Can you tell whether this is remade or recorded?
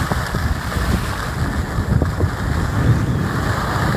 recorded